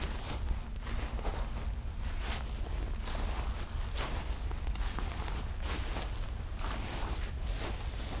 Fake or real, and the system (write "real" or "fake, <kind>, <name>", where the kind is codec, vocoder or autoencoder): real